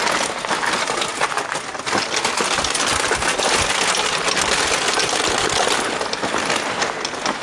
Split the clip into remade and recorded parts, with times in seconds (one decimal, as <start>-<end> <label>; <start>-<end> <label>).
0.0-7.4 recorded

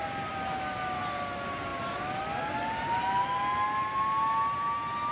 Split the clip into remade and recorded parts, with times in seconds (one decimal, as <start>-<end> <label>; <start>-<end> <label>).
0.0-5.1 recorded

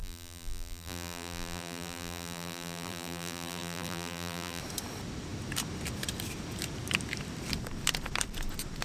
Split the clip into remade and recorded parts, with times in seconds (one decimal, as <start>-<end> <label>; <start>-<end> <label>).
0.0-4.6 remade; 4.6-8.8 recorded

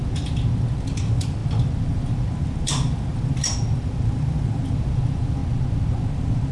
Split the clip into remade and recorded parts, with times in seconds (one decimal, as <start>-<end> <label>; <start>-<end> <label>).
0.0-5.4 remade; 5.4-6.5 recorded